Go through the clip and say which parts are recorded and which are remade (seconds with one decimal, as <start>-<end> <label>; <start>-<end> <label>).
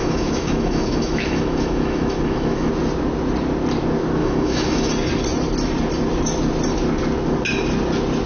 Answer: 0.0-2.7 remade; 2.7-4.2 recorded; 4.2-4.9 remade; 4.9-8.3 recorded